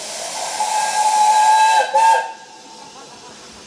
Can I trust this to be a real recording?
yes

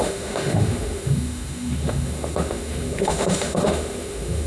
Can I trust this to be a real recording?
no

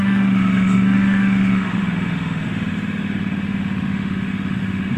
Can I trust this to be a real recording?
no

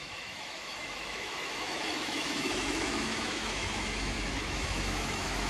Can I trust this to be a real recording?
no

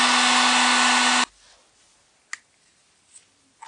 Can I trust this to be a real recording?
yes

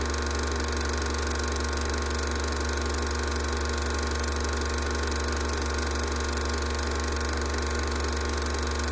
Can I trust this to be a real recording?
yes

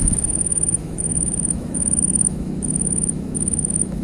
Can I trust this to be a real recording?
no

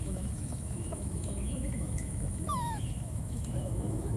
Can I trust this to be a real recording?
no